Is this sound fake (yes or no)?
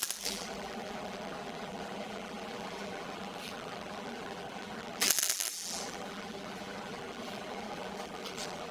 yes